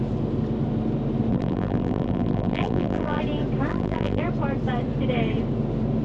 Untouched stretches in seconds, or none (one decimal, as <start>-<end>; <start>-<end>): 0.0-1.3; 3.2-3.7; 4.2-6.0